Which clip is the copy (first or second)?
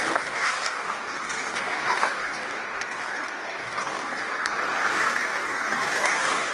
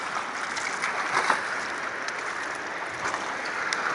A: first